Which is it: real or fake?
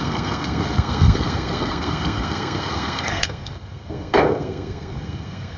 fake